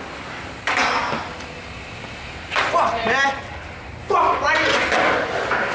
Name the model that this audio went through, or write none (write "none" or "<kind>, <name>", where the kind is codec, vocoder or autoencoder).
none